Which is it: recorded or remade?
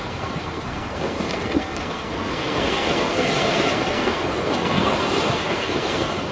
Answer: remade